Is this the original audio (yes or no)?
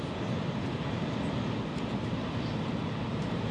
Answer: yes